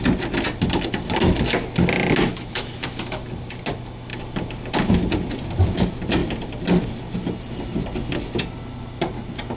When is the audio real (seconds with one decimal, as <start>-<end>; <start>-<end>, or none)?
0.0-2.3; 3.2-9.6